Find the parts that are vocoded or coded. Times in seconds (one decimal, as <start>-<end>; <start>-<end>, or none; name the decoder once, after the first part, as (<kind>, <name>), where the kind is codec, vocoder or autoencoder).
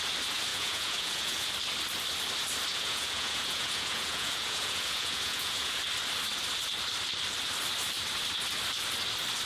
0.5-1.5 (vocoder, Vocos); 2.7-5.8